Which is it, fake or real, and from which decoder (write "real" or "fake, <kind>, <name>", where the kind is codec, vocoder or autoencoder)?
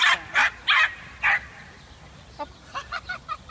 real